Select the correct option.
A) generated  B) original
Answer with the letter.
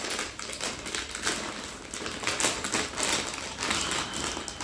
B